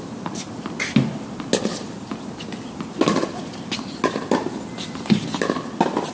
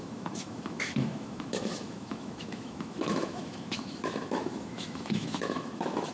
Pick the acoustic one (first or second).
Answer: first